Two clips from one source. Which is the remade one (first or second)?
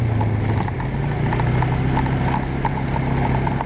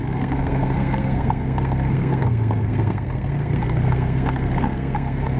second